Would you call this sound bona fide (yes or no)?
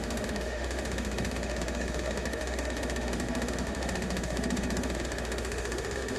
no